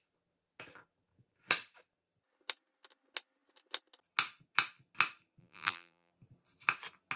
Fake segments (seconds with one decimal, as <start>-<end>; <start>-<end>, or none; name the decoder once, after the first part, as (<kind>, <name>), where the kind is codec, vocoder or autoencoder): 5.4-6.1 (vocoder, BigVGAN v2)